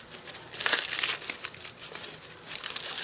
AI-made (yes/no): no